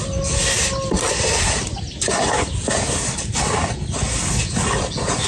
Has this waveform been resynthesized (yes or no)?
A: no